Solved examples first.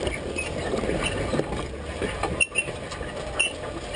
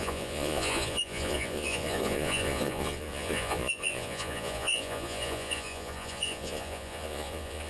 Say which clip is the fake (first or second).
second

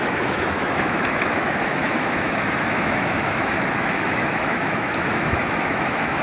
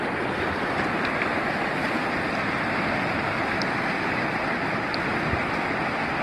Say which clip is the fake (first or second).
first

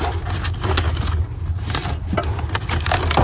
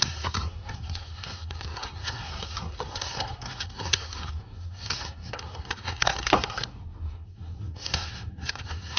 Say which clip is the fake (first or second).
second